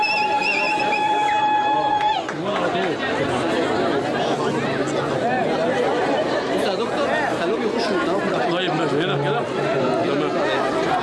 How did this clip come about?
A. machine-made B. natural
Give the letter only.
B